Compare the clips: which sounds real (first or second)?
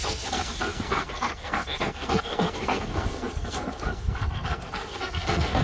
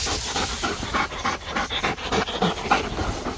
second